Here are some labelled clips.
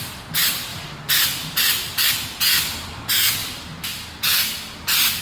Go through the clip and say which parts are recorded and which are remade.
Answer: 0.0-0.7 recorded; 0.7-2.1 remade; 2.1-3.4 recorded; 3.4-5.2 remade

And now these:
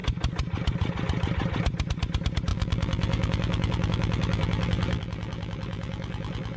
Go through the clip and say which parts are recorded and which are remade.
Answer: 0.0-2.5 recorded; 2.5-6.6 remade

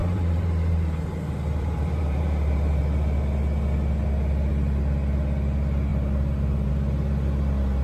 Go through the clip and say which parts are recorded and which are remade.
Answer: 0.0-2.8 remade; 2.8-5.9 recorded; 5.9-6.7 remade; 6.7-7.8 recorded

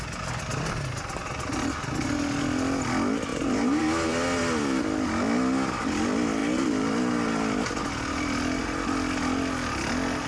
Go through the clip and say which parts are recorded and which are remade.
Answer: 0.0-3.3 recorded; 3.3-3.8 remade; 3.8-10.3 recorded